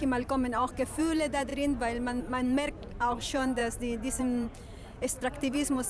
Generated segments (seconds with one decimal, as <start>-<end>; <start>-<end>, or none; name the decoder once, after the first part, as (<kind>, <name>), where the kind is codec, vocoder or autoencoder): 0.0-1.5 (vocoder, BigVGAN v2); 2.2-3.6; 4.2-5.9